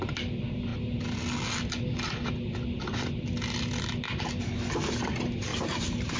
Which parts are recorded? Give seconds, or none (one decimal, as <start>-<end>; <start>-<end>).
0.0-5.5